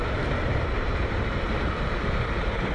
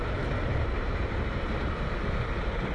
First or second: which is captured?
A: second